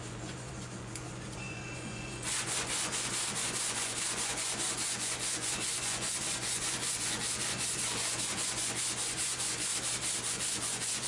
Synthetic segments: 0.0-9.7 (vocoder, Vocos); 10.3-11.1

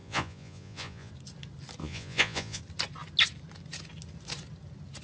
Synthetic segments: 0.0-1.1 (vocoder, Vocos); 1.8-2.6

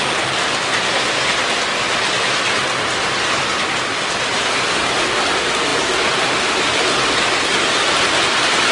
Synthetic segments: none

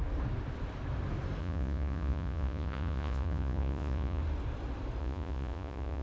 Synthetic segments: 1.4-4.2 (vocoder, Vocos); 5.0-6.0

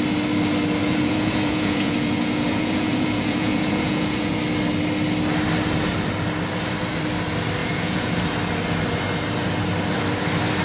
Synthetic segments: 0.8-4.4 (vocoder, Vocos); 7.6-8.2

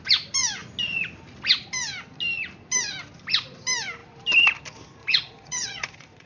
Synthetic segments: 5.0-6.3 (vocoder, Vocos)